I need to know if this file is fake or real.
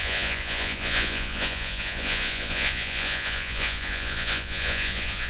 fake